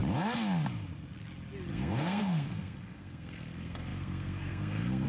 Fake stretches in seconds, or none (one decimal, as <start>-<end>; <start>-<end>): 1.7-5.1